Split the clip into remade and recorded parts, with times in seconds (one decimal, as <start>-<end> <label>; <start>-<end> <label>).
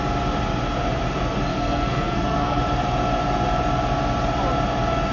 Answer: 0.0-1.5 recorded; 1.5-2.6 remade; 2.6-5.1 recorded